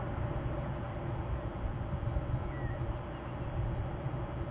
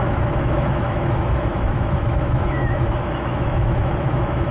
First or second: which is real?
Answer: first